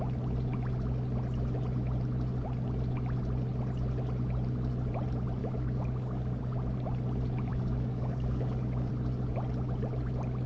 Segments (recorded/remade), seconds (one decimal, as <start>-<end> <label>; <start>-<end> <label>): 0.0-5.4 recorded; 5.4-6.4 remade; 6.4-7.5 recorded; 7.5-8.9 remade; 8.9-10.5 recorded